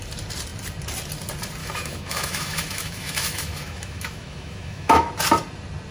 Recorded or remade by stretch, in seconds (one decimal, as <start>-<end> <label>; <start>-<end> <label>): 0.0-1.6 recorded; 1.6-5.1 remade; 5.1-5.9 recorded